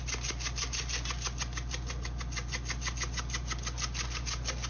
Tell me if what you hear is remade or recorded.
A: recorded